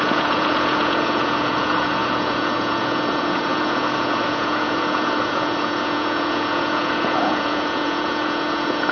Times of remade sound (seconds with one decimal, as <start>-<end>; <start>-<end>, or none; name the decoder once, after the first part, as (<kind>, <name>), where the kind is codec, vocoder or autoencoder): 0.0-8.9 (vocoder, Vocos)